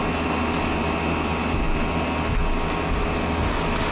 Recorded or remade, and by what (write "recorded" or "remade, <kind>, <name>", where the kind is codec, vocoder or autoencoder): recorded